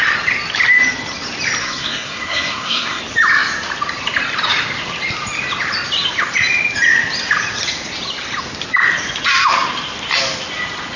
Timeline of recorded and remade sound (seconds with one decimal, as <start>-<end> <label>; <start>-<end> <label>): 0.0-1.6 recorded; 1.6-3.0 remade; 3.0-11.0 recorded